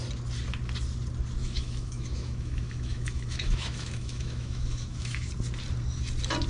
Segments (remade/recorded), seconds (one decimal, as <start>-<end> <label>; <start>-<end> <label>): 0.0-1.4 recorded; 1.4-5.3 remade; 5.3-6.5 recorded